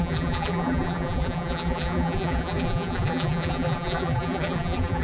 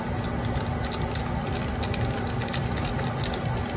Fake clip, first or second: first